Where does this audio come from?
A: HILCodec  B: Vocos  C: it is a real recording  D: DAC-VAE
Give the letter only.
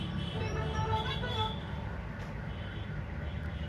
C